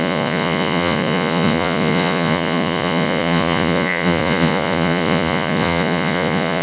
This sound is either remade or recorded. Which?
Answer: remade